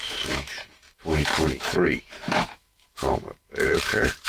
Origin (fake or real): fake